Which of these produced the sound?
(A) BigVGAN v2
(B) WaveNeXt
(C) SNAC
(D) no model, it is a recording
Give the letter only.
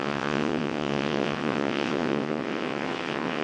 B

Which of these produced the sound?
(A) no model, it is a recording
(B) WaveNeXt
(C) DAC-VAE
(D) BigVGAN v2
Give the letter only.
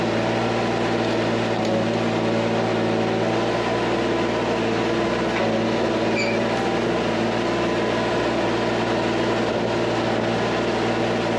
A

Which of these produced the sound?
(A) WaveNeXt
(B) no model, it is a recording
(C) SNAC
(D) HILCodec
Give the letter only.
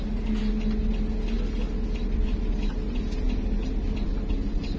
B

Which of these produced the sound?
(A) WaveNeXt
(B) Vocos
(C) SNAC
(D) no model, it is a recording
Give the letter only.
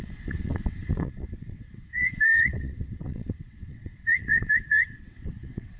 A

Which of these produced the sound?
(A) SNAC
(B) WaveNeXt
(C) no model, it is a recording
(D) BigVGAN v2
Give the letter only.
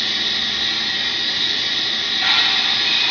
C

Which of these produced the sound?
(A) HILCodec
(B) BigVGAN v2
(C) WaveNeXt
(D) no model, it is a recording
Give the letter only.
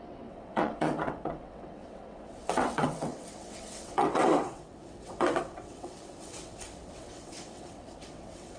C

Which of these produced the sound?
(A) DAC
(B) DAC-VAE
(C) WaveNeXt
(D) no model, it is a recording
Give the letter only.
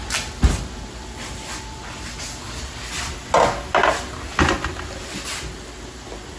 D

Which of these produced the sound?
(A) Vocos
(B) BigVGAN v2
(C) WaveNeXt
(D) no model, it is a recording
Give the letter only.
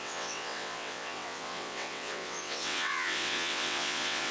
C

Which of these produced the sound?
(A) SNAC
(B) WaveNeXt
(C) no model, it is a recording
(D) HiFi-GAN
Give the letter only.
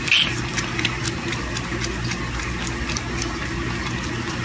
C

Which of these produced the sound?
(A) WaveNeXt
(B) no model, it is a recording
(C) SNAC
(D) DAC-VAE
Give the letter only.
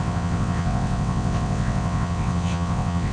A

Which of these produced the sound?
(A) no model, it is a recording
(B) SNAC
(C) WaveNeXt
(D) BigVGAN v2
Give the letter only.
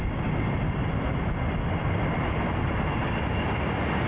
A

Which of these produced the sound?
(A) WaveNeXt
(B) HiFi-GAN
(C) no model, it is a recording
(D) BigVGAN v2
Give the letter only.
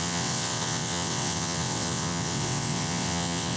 A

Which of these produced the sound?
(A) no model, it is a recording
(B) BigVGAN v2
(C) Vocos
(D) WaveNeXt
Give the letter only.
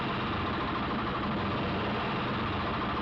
A